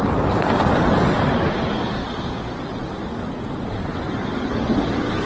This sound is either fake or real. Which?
real